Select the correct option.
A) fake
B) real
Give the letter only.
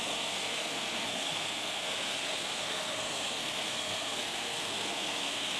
A